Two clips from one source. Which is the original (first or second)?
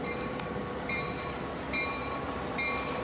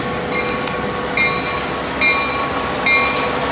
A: second